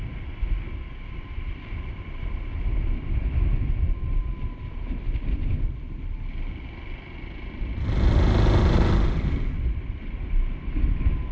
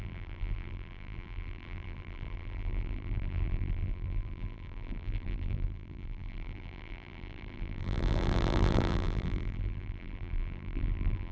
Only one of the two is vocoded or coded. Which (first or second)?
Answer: second